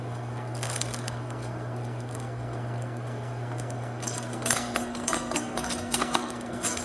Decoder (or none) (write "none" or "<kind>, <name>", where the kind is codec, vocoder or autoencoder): codec, SNAC